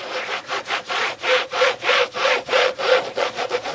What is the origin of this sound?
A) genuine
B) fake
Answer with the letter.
B